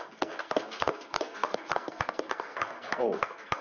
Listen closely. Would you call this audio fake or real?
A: fake